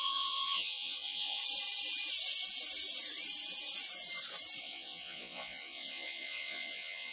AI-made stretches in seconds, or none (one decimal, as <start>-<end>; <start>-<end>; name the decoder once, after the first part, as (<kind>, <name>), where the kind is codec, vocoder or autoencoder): 0.0-1.4 (vocoder, Vocos); 4.6-7.1